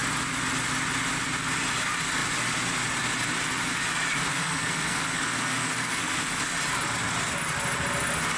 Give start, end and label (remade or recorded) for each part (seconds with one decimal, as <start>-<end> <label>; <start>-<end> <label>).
0.0-4.3 recorded; 4.3-6.4 remade; 6.4-8.4 recorded